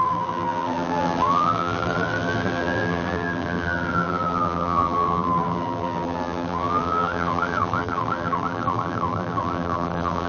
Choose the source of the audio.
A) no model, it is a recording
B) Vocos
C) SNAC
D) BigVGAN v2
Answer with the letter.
D